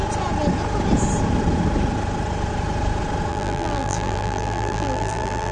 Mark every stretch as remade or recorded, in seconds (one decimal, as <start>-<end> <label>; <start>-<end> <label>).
0.0-3.3 recorded; 3.3-5.5 remade